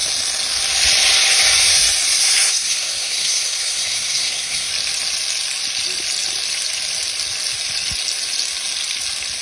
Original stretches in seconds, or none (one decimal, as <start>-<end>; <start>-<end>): 0.0-2.2; 4.7-9.4